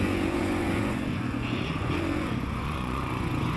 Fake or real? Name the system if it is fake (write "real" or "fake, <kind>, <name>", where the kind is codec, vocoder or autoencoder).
fake, vocoder, Vocos